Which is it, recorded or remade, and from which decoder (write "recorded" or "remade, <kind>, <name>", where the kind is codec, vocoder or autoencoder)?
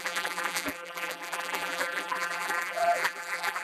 remade, vocoder, BigVGAN v2